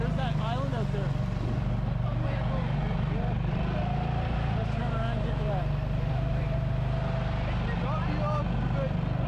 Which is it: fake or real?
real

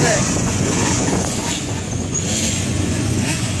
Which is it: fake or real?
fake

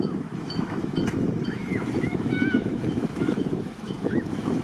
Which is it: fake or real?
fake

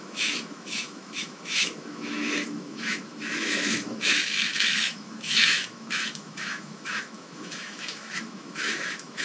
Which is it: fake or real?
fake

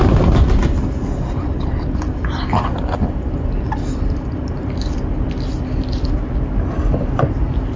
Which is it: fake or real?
real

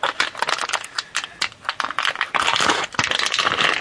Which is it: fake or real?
real